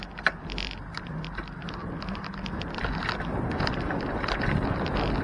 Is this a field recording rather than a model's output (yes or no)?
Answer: yes